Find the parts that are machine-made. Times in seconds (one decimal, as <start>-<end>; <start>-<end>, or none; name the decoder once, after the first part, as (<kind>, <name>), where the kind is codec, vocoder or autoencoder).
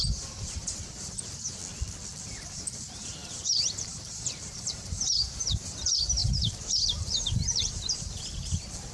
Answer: 0.0-1.6 (vocoder, BigVGAN v2); 2.2-8.9